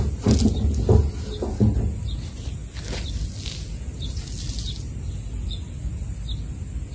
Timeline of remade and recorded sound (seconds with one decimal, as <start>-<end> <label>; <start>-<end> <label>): 0.0-6.9 recorded